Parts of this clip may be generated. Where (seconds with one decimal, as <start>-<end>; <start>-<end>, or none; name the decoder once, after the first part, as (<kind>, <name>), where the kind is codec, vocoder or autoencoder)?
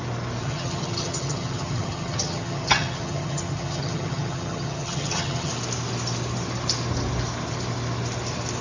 0.4-5.5 (vocoder, HiFi-GAN)